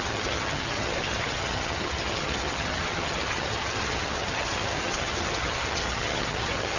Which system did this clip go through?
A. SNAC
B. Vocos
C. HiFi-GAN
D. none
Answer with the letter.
C